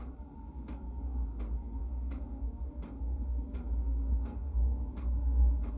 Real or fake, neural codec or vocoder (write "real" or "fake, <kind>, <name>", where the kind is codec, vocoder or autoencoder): fake, codec, SNAC